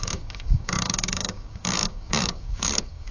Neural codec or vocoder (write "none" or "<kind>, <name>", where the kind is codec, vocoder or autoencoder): codec, DAC